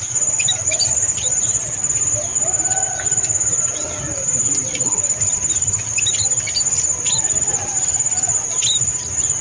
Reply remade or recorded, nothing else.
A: recorded